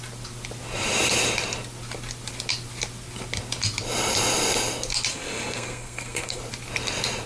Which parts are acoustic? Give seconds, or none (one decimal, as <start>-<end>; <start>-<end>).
0.0-5.1; 6.4-7.3